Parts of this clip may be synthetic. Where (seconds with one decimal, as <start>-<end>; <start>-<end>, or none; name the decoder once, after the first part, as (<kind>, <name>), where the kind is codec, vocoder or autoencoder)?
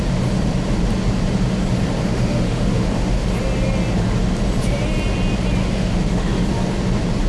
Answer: 2.0-3.3 (autoencoder, DAC-VAE); 5.6-6.5